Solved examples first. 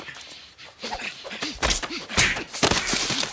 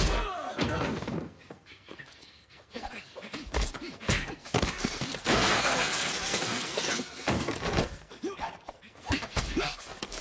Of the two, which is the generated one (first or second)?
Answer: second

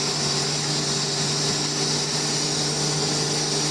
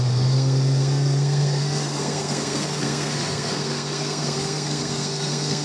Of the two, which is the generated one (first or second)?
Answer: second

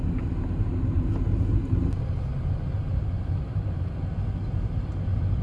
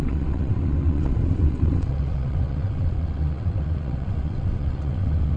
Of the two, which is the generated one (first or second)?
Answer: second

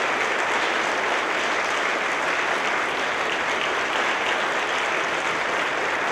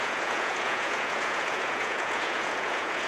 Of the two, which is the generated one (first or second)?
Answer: second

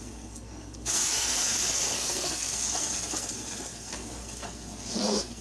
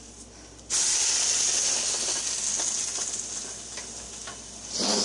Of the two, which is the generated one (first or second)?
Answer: first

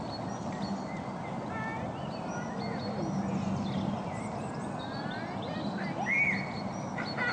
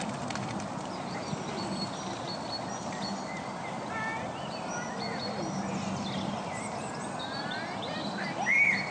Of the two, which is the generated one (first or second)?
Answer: second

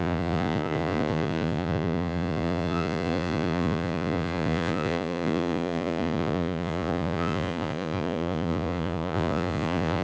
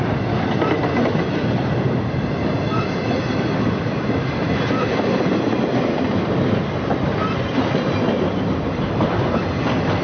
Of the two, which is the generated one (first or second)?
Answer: first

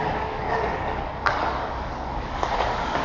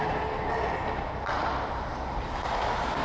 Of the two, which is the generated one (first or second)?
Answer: first